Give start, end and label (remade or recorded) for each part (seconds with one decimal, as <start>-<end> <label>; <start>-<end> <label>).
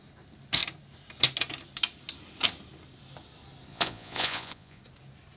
0.0-3.7 recorded; 3.7-4.8 remade; 4.8-5.4 recorded